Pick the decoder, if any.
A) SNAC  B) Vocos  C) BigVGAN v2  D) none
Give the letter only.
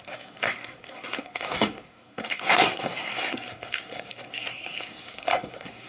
A